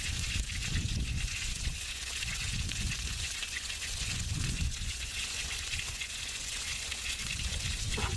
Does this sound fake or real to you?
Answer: fake